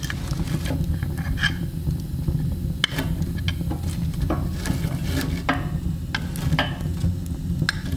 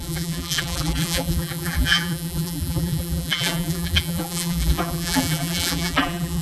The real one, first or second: first